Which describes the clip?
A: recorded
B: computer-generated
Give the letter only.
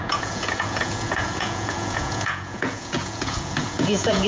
B